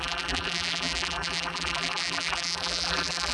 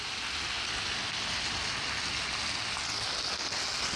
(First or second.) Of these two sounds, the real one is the second